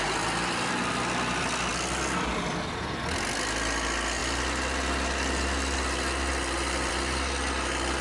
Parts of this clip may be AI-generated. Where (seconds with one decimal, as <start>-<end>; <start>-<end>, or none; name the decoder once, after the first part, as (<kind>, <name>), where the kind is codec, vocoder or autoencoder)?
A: none